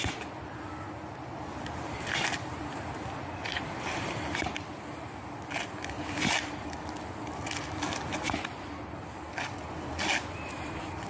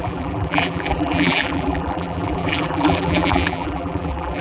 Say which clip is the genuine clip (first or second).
first